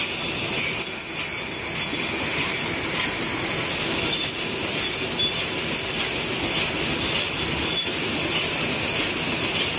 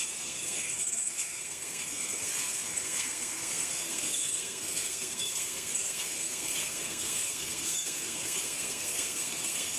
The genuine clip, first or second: first